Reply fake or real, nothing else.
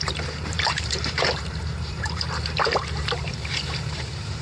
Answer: fake